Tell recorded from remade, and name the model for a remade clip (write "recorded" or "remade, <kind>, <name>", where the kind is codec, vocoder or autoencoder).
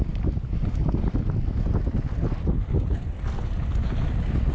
recorded